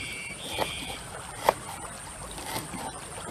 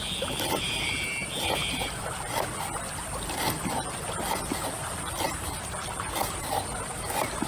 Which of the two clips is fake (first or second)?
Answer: first